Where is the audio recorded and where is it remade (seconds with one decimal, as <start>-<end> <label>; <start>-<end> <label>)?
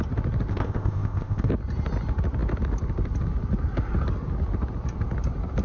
0.0-0.5 recorded; 0.5-1.5 remade; 1.5-5.6 recorded